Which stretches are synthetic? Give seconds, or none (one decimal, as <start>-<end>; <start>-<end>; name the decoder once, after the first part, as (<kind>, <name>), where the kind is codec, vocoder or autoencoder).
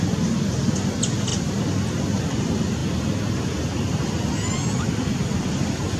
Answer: none